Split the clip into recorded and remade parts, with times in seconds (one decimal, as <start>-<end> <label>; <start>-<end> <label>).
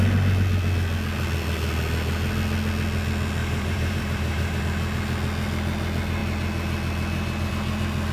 0.0-3.4 recorded; 3.4-4.6 remade; 4.6-8.1 recorded